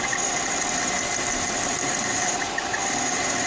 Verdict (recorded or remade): recorded